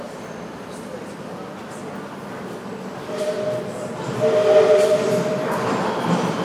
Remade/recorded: remade